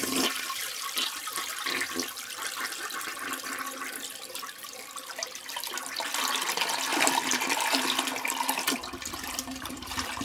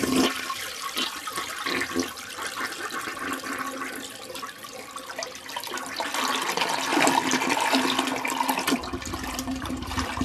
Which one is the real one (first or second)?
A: second